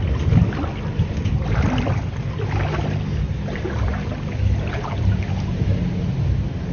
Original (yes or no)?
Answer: yes